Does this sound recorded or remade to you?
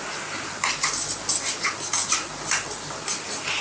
recorded